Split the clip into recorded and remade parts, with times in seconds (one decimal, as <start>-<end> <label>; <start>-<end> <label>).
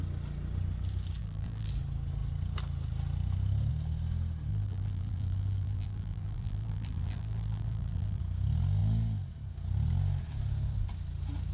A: 0.0-1.2 recorded; 1.2-1.7 remade; 1.7-4.5 recorded; 4.5-8.2 remade; 8.2-11.5 recorded